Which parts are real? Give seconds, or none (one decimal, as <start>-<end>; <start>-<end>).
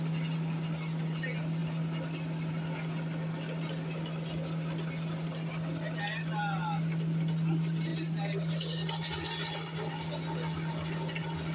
0.0-11.5